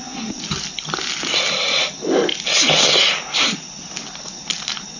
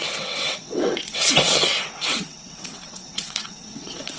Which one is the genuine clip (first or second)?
first